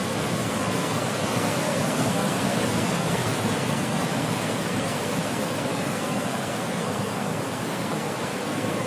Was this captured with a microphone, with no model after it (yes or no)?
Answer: no